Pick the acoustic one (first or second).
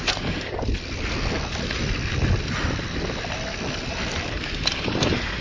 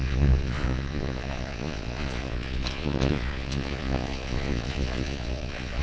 first